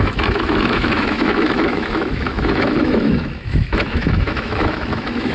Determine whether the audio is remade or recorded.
remade